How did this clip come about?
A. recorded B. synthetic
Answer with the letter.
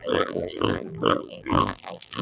B